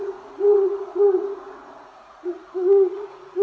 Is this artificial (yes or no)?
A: yes